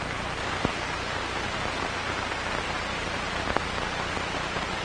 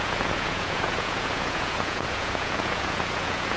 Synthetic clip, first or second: second